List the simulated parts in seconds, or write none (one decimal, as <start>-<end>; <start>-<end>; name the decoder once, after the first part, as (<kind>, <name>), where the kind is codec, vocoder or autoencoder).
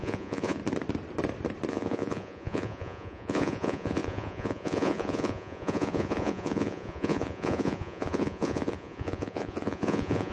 0.0-0.6 (vocoder, Vocos); 1.7-10.3